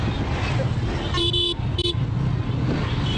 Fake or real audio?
real